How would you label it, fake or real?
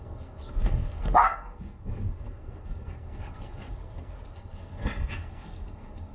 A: fake